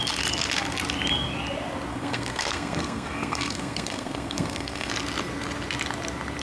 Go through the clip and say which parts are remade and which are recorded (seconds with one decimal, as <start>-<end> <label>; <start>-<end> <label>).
0.0-1.9 recorded; 1.9-4.9 remade; 4.9-6.4 recorded